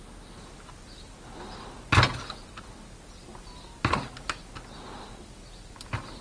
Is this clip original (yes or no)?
yes